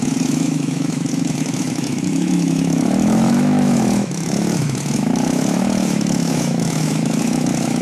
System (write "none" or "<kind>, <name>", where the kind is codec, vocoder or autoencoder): autoencoder, DAC-VAE